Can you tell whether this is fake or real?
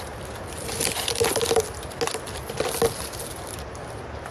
real